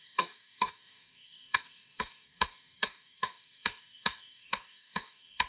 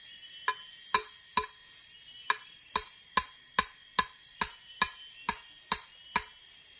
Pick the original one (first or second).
second